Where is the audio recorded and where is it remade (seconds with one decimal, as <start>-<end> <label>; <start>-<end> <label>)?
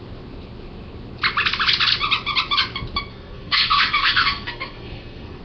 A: 0.0-3.1 recorded; 3.1-5.4 remade